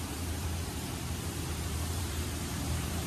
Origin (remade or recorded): remade